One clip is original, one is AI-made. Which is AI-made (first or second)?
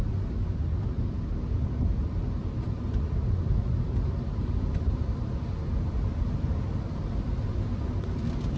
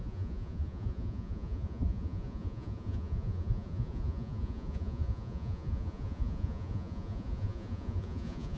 second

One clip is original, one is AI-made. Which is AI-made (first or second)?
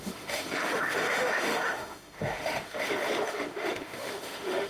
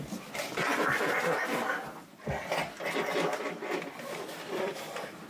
first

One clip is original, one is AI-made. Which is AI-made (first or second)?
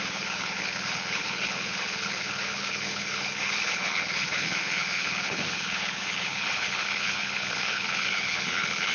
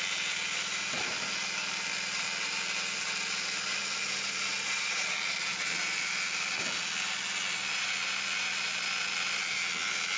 first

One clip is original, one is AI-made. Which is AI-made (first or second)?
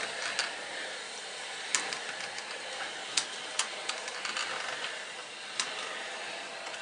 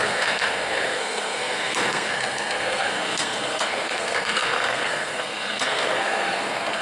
second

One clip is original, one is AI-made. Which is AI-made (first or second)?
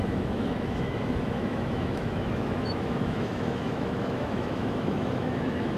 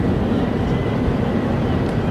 first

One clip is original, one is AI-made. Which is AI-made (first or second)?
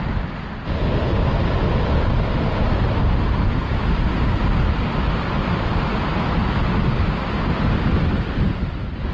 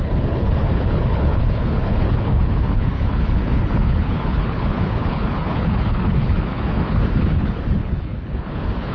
second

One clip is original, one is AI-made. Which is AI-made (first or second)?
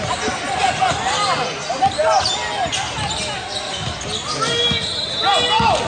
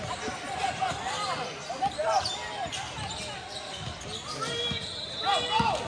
second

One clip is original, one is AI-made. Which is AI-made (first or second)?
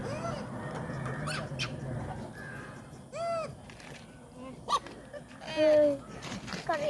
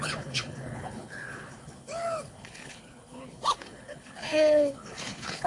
second